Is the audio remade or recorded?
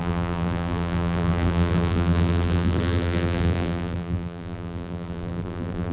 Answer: remade